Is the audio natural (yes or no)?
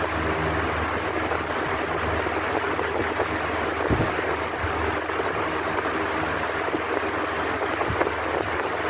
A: yes